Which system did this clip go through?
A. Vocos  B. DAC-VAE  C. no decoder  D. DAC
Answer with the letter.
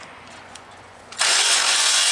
A